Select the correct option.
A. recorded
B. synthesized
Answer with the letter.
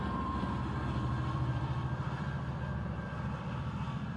B